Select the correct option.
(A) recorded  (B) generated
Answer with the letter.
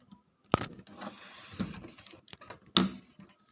A